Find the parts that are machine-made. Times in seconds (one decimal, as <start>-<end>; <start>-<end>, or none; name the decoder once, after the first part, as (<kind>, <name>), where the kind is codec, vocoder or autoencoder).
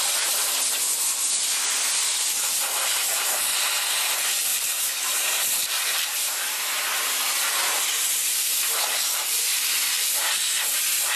4.5-6.4 (vocoder, BigVGAN v2); 8.2-10.1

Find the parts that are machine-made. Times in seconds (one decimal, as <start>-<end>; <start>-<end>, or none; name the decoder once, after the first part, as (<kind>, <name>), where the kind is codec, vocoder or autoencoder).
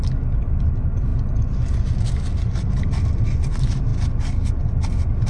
none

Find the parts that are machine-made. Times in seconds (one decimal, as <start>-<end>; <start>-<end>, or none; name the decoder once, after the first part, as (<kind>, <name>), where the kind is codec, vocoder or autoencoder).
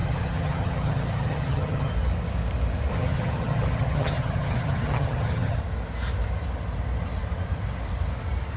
0.0-1.9 (vocoder, HiFi-GAN); 2.9-5.6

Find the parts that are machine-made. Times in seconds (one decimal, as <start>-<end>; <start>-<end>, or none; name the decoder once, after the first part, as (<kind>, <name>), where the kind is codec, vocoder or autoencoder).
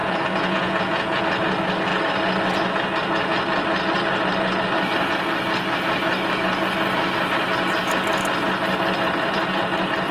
0.0-1.2 (vocoder, Vocos)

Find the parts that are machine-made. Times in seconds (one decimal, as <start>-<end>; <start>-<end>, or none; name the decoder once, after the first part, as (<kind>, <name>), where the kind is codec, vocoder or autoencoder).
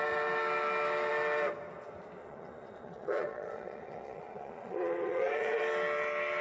2.2-5.6 (vocoder, Vocos)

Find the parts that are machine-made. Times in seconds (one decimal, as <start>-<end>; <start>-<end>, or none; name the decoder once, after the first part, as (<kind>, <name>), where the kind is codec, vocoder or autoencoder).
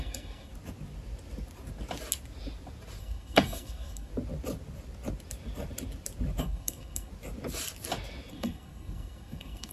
0.0-0.5 (codec, SNAC); 3.0-4.1; 6.4-7.1; 8.3-9.7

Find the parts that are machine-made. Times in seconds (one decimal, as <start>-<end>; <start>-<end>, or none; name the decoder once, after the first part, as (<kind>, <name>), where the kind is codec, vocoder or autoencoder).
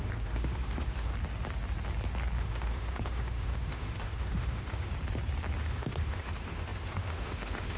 0.0-1.1 (autoencoder, DAC-VAE); 2.4-4.9; 5.6-7.8